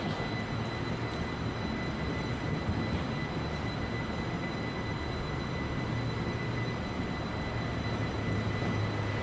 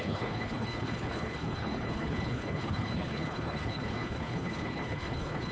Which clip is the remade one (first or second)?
second